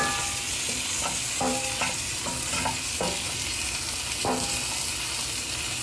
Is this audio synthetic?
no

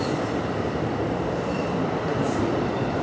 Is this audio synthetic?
yes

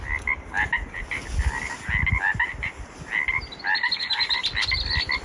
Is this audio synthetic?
no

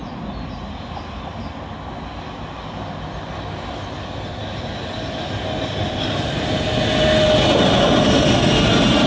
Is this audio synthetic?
no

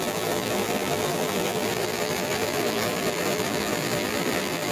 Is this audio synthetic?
yes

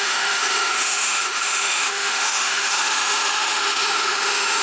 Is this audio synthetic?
yes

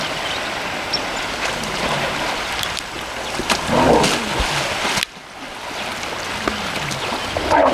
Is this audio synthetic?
no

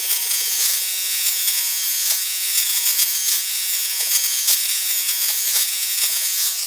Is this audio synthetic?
yes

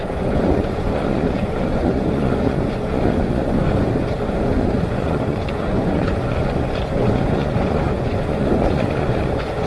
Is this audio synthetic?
yes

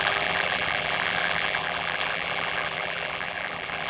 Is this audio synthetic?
yes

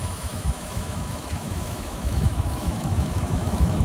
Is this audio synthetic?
yes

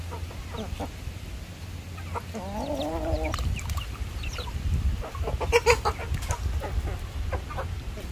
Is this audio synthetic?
no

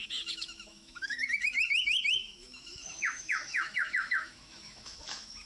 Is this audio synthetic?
yes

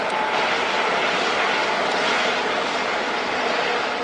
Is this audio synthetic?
no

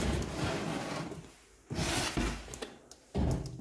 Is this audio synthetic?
no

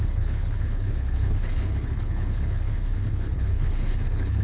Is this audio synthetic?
yes